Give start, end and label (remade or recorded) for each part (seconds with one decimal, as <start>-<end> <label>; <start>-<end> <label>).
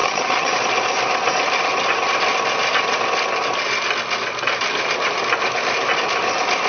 0.0-0.5 remade; 0.5-6.7 recorded